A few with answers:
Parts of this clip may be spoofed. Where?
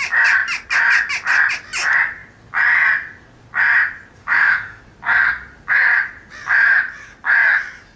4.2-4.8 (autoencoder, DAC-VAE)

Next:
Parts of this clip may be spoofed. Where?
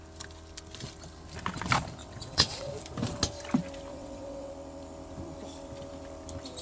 2.0-2.7 (vocoder, WaveNeXt); 3.9-4.5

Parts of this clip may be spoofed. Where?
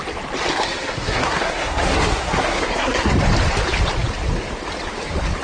0.5-3.1 (codec, SNAC)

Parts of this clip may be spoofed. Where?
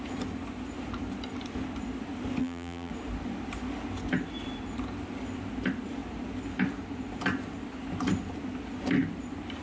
2.4-2.9 (vocoder, BigVGAN v2)